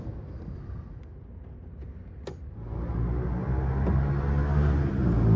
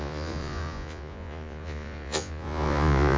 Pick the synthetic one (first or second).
second